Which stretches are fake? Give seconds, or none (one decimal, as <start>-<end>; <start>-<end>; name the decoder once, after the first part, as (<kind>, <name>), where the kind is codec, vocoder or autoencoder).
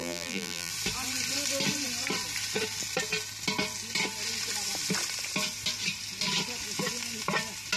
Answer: 0.0-0.7 (vocoder, BigVGAN v2)